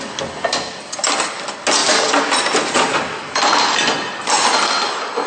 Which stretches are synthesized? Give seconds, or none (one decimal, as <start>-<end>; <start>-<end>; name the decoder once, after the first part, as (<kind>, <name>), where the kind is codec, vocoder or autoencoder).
1.8-4.5 (vocoder, BigVGAN v2)